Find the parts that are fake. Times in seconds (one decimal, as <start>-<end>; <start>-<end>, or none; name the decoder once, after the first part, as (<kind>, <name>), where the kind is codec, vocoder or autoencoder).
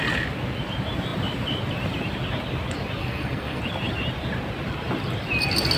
3.0-3.6 (codec, SNAC)